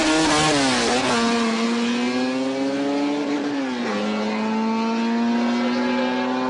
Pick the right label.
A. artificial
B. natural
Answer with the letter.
B